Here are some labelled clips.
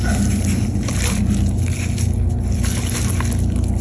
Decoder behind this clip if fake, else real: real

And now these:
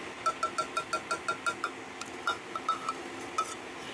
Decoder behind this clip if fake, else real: real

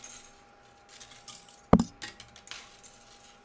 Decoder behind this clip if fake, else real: real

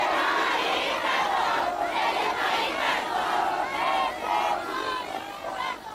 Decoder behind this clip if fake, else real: real